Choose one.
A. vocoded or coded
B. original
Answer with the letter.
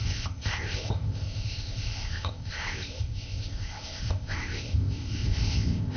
A